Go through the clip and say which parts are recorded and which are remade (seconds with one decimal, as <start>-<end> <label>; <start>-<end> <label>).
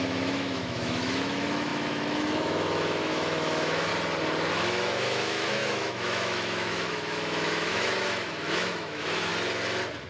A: 0.0-3.9 remade; 3.9-4.5 recorded; 4.5-9.3 remade; 9.3-10.1 recorded